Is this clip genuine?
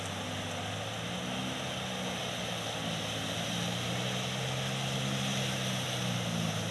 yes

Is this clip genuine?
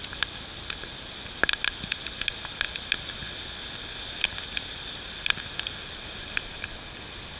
yes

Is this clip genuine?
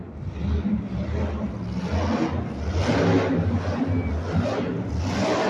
yes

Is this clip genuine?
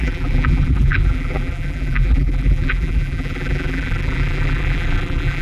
no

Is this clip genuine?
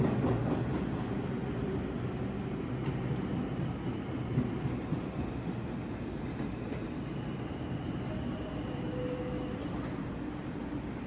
yes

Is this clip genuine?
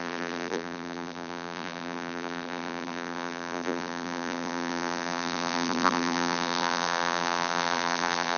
no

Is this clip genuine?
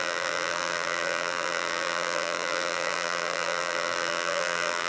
no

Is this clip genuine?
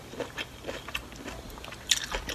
no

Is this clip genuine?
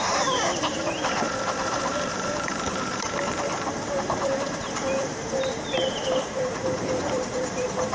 no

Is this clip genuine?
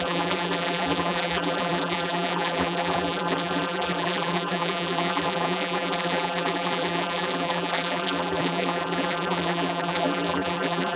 no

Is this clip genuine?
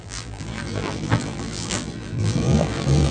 no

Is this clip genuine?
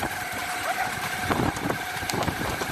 no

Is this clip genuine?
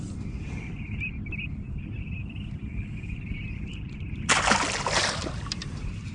no